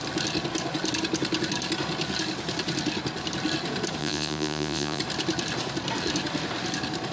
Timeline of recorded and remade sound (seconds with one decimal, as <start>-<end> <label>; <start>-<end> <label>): 0.0-4.0 recorded; 4.0-5.0 remade; 5.0-7.1 recorded